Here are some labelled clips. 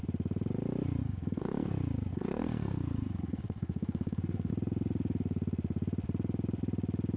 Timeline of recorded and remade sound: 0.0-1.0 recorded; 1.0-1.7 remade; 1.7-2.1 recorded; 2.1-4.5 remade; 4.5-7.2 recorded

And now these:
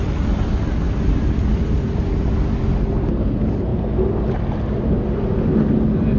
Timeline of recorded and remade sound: 0.0-6.2 recorded

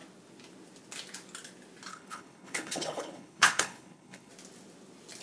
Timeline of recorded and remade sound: 0.0-1.9 recorded; 1.9-4.3 remade; 4.3-5.2 recorded

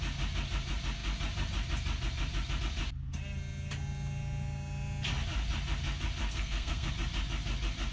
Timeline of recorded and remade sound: 0.0-6.2 recorded; 6.2-6.9 remade; 6.9-7.9 recorded